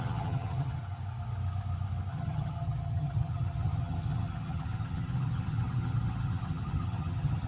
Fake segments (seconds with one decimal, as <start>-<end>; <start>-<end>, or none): 0.0-0.8; 2.1-7.5